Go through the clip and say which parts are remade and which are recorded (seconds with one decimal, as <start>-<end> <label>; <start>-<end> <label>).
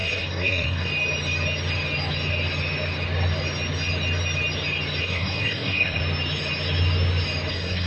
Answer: 0.0-0.9 remade; 0.9-5.0 recorded; 5.0-6.0 remade; 6.0-7.5 recorded; 7.5-7.9 remade